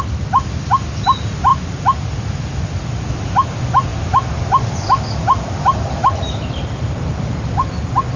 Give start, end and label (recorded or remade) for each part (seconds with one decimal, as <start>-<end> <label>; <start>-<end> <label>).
0.0-8.2 recorded